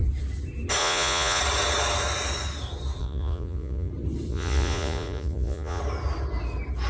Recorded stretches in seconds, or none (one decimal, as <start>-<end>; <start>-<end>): 0.0-0.8; 1.4-3.0; 3.9-4.3; 5.8-6.9